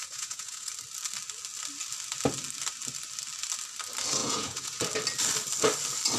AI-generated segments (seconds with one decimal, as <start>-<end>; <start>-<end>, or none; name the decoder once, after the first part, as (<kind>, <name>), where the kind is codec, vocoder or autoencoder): 0.0-0.7 (vocoder, Vocos); 4.2-4.8